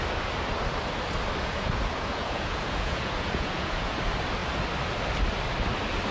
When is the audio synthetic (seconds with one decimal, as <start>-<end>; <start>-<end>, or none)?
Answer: 1.4-4.0